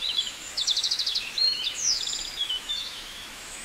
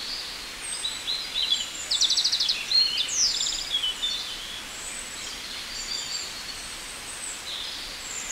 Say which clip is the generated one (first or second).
first